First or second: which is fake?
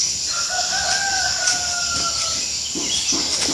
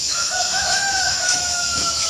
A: second